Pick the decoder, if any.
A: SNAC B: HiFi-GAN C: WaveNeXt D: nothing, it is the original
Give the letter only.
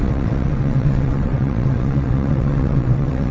C